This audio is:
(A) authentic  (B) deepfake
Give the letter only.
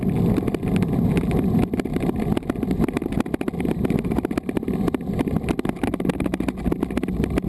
A